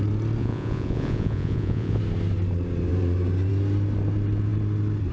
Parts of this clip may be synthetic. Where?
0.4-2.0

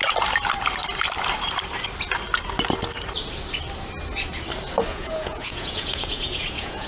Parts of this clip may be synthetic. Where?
4.9-6.9

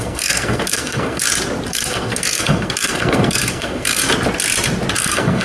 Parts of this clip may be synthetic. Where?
0.0-1.2; 1.7-4.0; 5.0-5.4

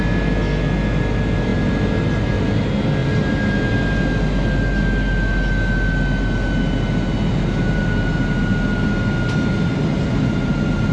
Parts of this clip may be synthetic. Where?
none

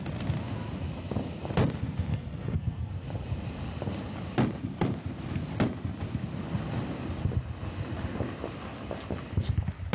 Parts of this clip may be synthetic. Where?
2.1-2.9

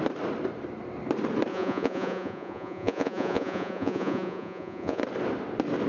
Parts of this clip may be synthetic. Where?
1.5-5.0